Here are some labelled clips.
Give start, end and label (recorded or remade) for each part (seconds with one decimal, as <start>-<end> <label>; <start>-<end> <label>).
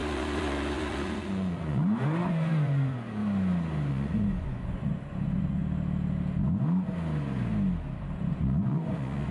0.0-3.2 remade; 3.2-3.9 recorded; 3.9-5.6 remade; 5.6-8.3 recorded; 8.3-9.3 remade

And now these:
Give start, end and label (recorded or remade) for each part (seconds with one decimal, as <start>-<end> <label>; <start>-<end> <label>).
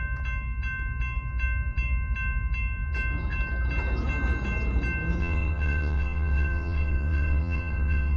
0.0-5.2 recorded; 5.2-8.2 remade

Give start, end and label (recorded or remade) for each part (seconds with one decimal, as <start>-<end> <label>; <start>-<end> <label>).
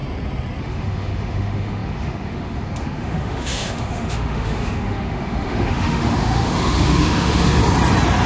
0.0-0.6 recorded; 0.6-7.6 remade; 7.6-8.3 recorded